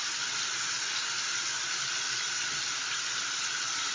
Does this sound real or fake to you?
real